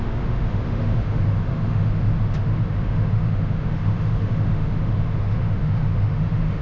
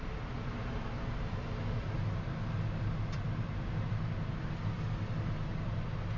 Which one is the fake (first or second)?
first